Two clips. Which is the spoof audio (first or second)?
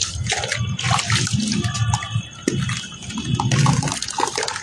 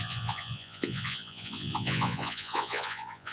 second